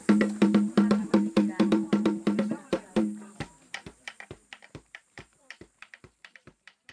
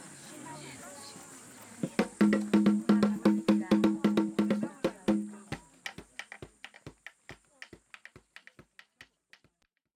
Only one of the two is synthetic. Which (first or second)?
first